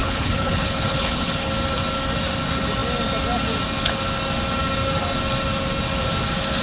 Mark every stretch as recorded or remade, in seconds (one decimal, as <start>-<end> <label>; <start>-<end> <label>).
0.0-1.5 remade; 1.5-6.6 recorded